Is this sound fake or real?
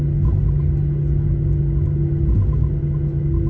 real